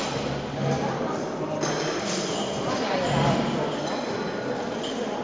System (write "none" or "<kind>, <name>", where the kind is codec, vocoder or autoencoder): none